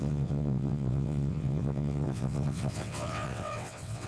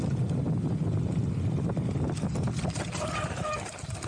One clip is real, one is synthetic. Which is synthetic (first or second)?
first